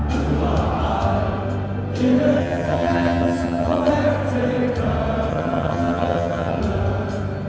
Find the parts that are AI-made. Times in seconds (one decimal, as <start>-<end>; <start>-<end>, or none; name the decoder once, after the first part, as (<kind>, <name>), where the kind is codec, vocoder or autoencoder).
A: 2.4-3.9 (vocoder, HiFi-GAN); 5.3-6.6